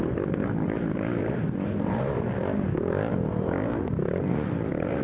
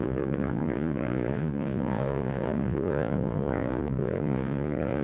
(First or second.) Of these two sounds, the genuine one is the first